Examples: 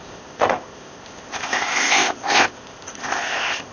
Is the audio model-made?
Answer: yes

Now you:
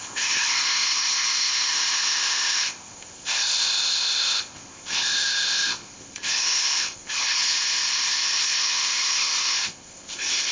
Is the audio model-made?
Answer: yes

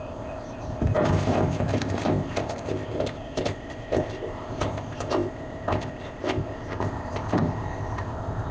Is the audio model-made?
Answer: yes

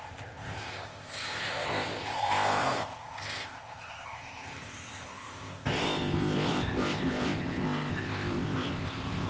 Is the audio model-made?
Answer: yes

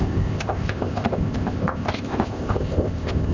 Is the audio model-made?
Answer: yes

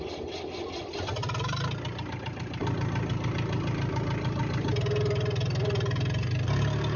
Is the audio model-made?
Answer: no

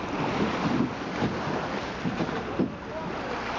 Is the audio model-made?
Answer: no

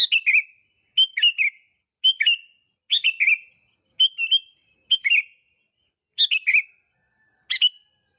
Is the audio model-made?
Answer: no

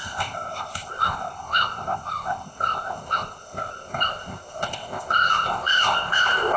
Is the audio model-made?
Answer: yes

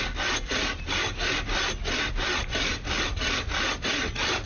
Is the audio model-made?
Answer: no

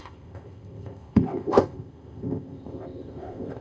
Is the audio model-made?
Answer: yes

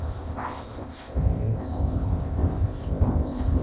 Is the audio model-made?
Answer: yes